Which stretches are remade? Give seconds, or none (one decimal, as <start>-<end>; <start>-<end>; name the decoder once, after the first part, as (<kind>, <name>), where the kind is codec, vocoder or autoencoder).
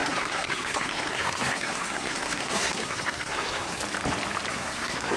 0.0-3.8 (codec, SNAC); 4.5-5.2